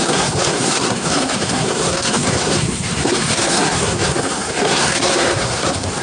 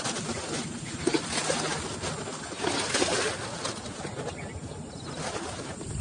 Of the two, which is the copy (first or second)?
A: first